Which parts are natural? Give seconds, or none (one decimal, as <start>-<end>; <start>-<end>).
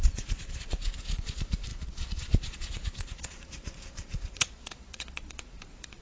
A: none